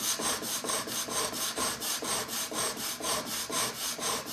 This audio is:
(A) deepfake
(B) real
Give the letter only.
A